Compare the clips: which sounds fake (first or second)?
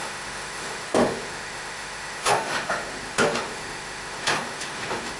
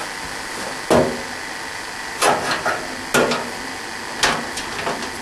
first